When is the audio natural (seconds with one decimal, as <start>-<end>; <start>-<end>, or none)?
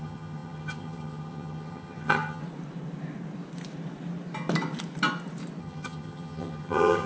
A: 2.4-5.6